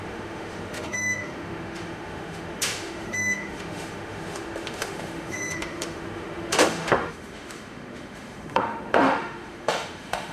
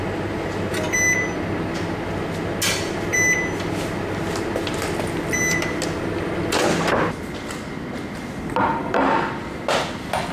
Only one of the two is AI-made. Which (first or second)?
first